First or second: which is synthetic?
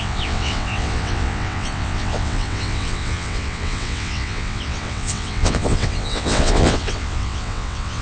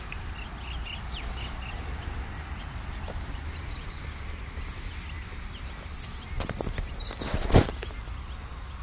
first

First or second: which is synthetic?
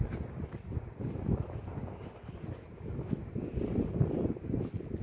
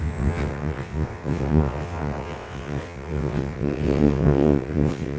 second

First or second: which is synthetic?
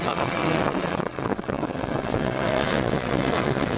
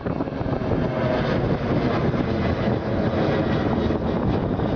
first